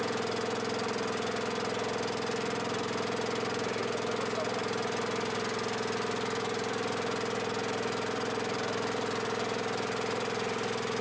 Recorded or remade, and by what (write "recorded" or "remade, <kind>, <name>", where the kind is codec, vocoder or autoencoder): recorded